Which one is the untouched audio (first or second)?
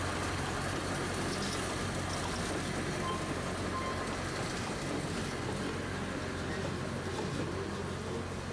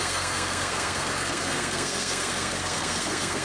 first